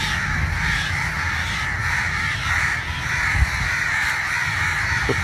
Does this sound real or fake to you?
real